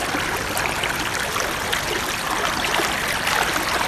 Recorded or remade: recorded